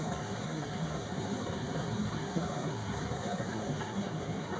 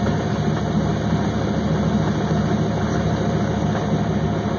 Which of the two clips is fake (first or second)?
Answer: first